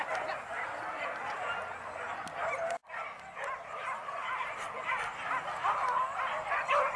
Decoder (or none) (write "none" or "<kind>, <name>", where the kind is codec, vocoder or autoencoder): none